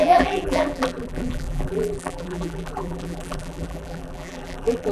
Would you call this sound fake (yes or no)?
yes